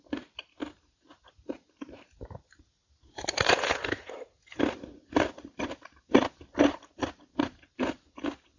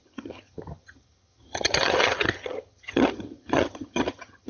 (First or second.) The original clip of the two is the first